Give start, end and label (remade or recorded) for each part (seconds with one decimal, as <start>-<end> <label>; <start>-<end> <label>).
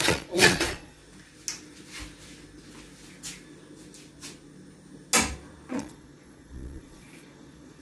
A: 0.0-1.0 remade; 1.0-5.7 recorded; 5.7-7.8 remade